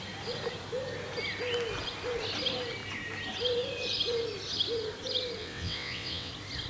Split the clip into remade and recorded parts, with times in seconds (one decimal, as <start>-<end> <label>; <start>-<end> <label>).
0.0-5.4 recorded; 5.4-6.3 remade; 6.3-6.7 recorded